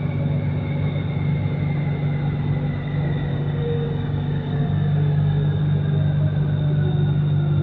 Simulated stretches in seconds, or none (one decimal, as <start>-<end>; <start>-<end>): 3.3-5.6